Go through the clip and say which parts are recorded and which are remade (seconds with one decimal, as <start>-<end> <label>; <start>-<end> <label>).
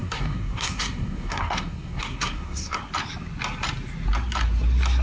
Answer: 0.0-2.8 remade; 2.8-5.0 recorded